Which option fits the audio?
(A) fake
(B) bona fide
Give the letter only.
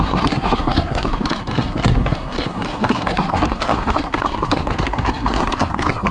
A